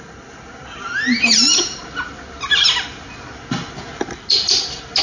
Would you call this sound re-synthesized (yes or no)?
no